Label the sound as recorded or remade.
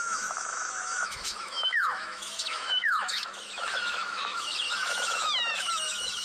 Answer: remade